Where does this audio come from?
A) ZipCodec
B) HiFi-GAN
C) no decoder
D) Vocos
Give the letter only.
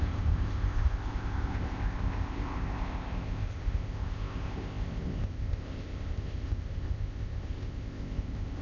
A